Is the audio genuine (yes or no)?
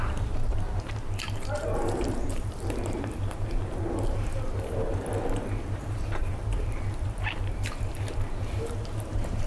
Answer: no